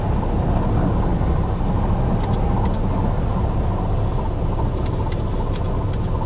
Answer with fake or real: real